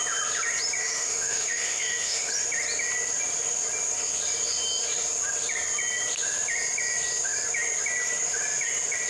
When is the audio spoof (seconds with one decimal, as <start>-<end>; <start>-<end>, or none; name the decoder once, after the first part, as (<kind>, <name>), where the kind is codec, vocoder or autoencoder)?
0.8-2.3 (autoencoder, DAC-VAE)